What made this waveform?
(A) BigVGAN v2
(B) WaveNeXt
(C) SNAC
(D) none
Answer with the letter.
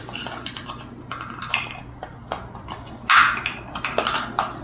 D